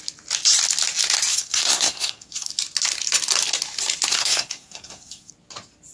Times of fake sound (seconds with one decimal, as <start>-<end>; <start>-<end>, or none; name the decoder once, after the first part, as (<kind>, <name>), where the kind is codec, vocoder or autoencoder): 1.3-2.5 (codec, SNAC); 4.1-5.3